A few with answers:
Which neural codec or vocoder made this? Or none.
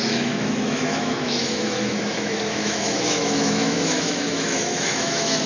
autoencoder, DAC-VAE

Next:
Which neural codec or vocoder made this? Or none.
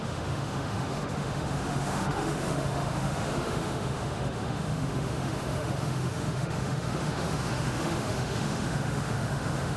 autoencoder, DAC-VAE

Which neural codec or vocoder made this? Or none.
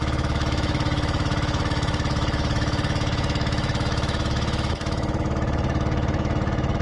autoencoder, DAC-VAE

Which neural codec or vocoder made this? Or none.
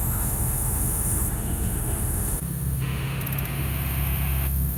autoencoder, DAC-VAE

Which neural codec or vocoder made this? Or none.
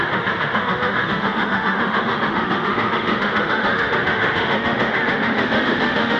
autoencoder, DAC-VAE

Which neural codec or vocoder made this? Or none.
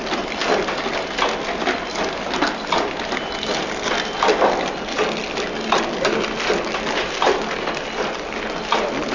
none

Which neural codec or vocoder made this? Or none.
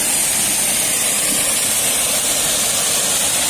none